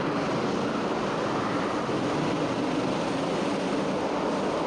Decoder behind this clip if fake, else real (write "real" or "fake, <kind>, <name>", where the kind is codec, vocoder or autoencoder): real